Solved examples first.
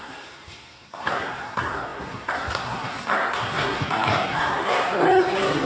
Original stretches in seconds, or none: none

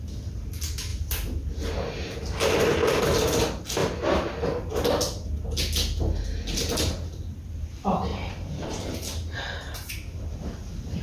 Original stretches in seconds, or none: 0.0-8.1; 9.9-11.0

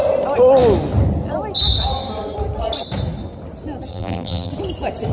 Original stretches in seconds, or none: 0.0-3.9; 4.5-5.1

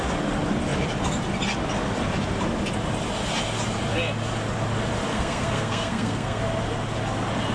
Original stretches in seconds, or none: 0.0-5.1; 6.4-7.5

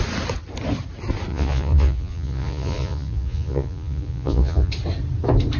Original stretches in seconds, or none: 0.0-1.3; 4.7-5.6

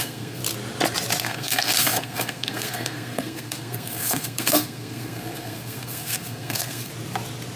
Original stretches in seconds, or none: 0.4-1.2; 6.9-7.6

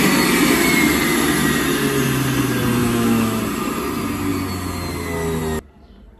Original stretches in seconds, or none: 0.0-2.8; 3.4-6.2